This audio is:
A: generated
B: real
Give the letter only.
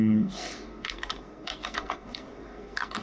A